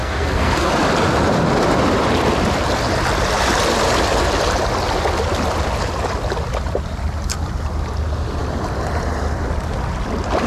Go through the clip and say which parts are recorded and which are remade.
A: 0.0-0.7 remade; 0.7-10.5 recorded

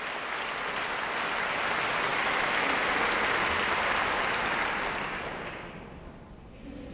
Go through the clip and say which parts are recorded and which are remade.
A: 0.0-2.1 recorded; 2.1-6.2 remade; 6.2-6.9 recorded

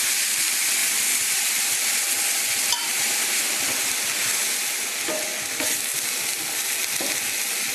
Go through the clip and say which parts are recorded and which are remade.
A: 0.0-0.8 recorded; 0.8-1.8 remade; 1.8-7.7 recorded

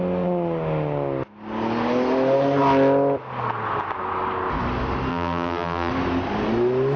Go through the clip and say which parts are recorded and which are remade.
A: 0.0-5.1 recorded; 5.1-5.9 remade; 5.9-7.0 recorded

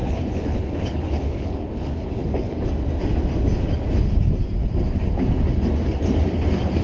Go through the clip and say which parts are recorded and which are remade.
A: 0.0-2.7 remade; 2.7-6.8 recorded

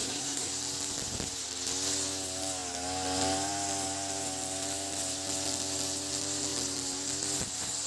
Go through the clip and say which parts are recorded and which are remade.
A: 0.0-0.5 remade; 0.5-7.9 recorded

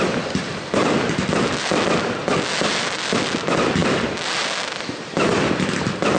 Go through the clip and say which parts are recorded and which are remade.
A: 0.0-6.2 recorded